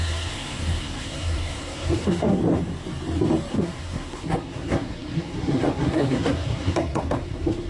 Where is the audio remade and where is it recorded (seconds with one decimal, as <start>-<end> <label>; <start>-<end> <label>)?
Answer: 0.0-2.4 remade; 2.4-3.5 recorded; 3.5-7.7 remade